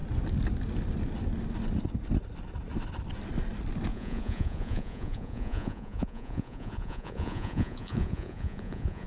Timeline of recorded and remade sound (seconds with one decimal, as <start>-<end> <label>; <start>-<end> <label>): 0.0-3.9 recorded; 3.9-9.1 remade